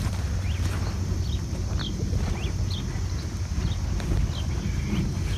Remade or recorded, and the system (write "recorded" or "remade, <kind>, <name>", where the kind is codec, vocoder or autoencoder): recorded